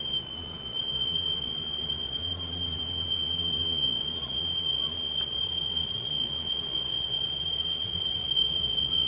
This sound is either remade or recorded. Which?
remade